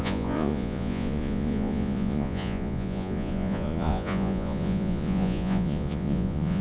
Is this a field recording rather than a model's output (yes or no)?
no